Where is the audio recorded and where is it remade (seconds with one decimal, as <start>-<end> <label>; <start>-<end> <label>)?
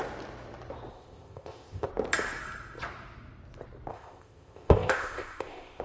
0.0-0.9 recorded; 0.9-1.9 remade; 1.9-3.9 recorded; 3.9-5.8 remade